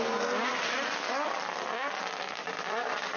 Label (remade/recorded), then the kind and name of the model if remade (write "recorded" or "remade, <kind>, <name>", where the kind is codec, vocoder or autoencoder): recorded